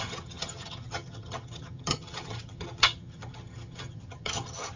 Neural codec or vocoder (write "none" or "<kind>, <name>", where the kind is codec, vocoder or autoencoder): vocoder, HiFi-GAN